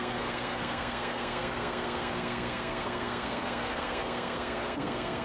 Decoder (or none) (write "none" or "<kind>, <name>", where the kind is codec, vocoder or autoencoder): codec, SNAC